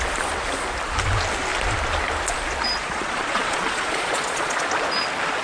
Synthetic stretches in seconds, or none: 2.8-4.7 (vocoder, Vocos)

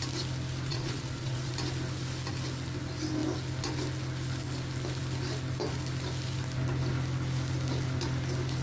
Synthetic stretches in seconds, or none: 0.7-1.5 (vocoder, Vocos)

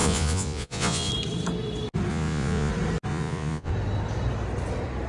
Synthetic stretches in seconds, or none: 0.0-1.1 (vocoder, Vocos); 2.1-2.7; 3.1-3.7

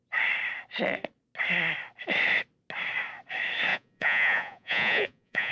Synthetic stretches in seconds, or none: 3.7-5.5 (vocoder, Vocos)